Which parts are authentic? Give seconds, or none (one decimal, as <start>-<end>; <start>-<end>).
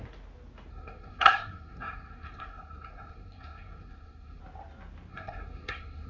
0.0-0.7; 4.4-5.1